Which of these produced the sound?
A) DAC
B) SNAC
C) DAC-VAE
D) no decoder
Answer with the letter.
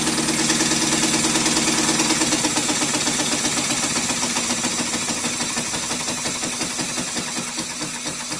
D